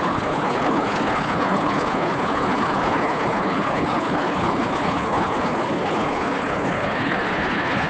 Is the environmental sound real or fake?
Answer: fake